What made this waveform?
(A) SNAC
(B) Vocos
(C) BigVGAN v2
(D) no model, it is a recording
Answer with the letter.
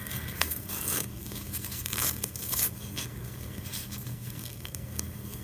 A